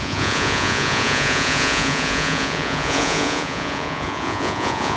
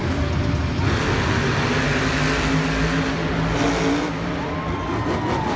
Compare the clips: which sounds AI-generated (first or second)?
first